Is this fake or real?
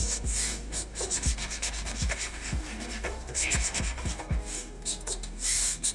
fake